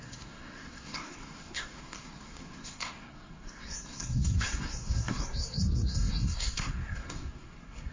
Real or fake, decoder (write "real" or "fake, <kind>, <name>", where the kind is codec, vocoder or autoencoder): fake, codec, SNAC